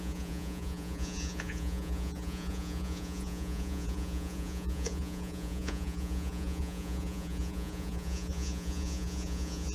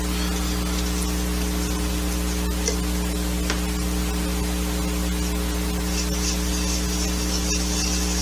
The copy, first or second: first